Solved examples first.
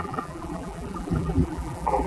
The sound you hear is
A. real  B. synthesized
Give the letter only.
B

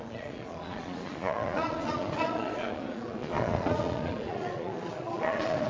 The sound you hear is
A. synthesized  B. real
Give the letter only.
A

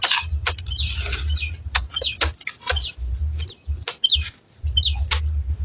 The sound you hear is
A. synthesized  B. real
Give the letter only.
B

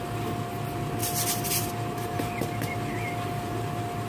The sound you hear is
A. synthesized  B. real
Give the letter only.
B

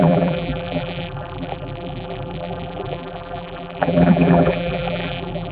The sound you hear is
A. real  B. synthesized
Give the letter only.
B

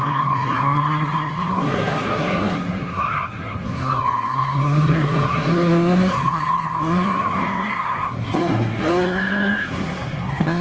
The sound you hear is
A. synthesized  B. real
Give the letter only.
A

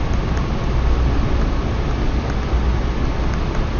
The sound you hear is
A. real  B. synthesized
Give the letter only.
A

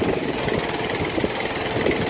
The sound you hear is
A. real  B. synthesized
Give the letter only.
A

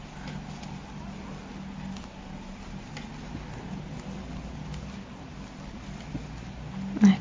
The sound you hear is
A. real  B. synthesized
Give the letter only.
A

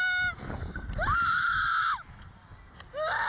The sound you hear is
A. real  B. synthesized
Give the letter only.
A